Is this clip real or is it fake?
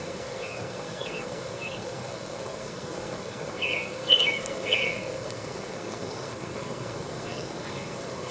fake